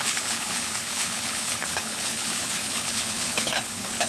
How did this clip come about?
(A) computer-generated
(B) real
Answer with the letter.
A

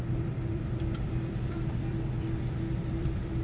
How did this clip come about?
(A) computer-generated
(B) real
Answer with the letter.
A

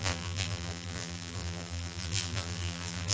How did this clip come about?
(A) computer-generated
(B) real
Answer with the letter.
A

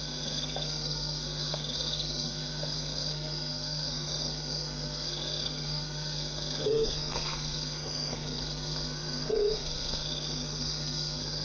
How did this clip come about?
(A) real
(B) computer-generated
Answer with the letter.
B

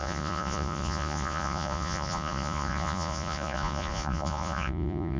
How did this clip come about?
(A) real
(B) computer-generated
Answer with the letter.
B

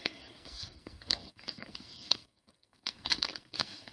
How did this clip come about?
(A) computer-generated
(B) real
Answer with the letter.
A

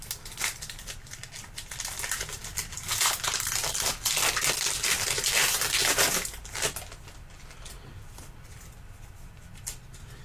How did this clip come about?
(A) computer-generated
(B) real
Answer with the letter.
A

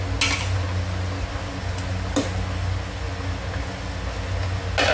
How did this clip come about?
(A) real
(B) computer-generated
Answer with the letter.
A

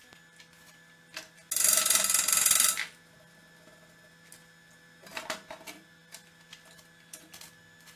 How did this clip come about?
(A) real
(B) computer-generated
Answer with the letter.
A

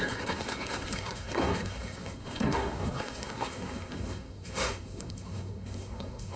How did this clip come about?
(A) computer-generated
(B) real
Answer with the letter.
A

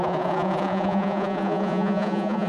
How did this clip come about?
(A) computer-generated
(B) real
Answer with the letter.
A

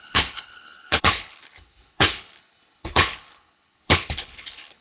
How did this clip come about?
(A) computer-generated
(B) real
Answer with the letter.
A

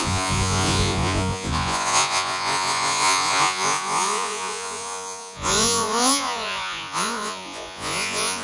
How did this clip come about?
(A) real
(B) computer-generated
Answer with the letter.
B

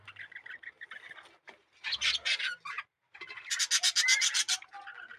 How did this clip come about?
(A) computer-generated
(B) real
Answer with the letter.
B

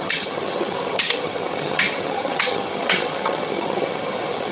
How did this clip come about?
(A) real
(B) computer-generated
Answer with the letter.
B